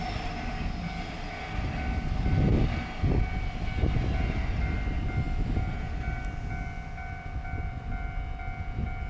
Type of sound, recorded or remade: recorded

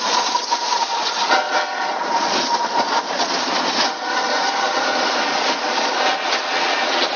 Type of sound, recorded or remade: remade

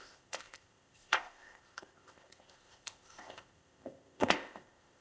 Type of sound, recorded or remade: remade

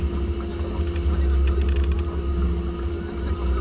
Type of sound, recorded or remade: recorded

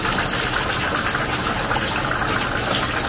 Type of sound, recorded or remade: recorded